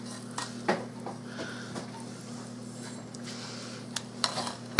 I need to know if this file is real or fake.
real